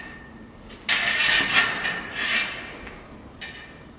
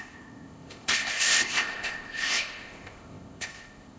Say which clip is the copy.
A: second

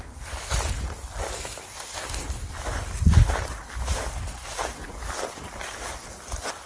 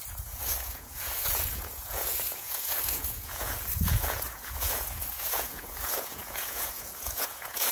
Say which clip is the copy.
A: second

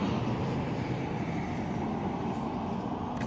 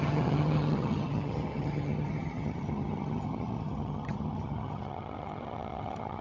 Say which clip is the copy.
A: second